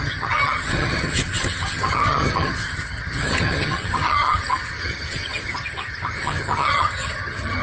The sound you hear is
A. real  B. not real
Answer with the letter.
B